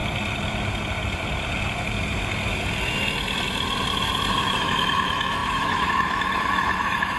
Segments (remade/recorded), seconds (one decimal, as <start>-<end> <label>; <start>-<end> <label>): 0.0-4.3 recorded; 4.3-7.2 remade